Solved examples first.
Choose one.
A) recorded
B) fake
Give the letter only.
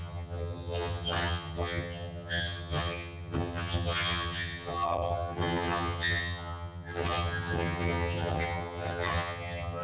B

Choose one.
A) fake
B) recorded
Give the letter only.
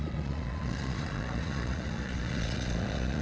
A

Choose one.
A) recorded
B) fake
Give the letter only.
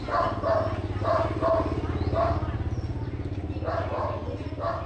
A